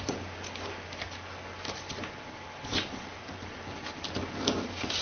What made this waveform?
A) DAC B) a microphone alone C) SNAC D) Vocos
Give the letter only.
B